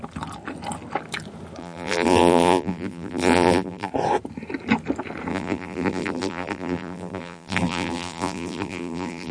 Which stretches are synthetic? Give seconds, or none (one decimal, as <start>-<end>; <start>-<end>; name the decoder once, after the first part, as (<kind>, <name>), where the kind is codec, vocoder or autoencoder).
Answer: 1.6-3.9 (vocoder, BigVGAN v2); 5.3-9.3